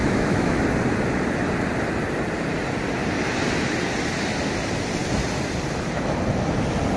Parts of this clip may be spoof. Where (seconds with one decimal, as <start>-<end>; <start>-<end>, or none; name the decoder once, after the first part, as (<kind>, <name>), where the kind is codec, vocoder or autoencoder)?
0.0-0.6 (autoencoder, DAC-VAE)